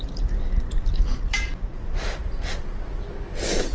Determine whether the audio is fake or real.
real